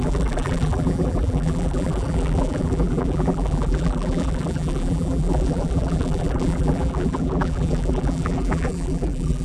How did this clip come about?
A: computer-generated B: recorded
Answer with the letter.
A